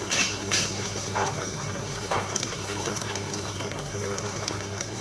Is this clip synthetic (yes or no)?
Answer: yes